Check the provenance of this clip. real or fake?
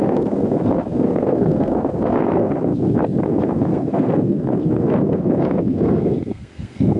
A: fake